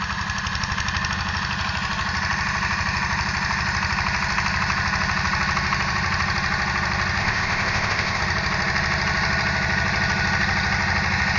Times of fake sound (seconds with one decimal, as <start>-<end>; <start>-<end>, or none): 7.2-8.2